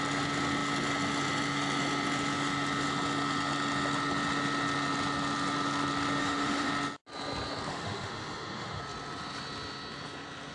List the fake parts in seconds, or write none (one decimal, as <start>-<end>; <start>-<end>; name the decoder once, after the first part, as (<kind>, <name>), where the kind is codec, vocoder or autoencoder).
6.2-6.7 (autoencoder, DAC-VAE); 7.7-8.8